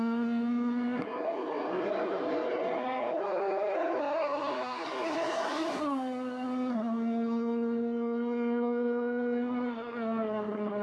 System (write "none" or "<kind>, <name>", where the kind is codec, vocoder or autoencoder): codec, SNAC